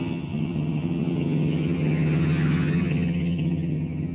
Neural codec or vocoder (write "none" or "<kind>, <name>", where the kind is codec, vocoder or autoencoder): vocoder, HiFi-GAN